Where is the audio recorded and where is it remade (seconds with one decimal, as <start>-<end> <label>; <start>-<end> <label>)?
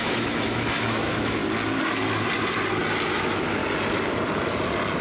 0.0-1.4 remade; 1.4-3.1 recorded; 3.1-3.6 remade; 3.6-5.0 recorded